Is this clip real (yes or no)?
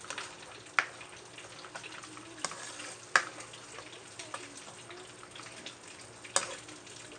yes